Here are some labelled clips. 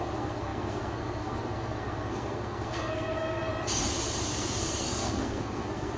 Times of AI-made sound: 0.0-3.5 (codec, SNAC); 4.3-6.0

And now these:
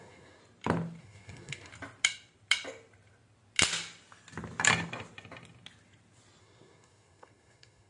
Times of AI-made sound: 0.0-0.4 (codec, SNAC); 1.0-1.7; 6.4-7.9